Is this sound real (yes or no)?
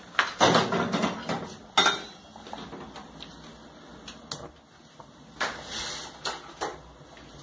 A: yes